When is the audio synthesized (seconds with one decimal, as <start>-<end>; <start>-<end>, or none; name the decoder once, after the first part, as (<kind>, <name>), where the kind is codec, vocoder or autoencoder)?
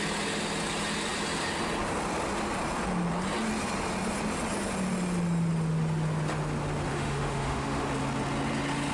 6.9-7.9 (autoencoder, DAC-VAE)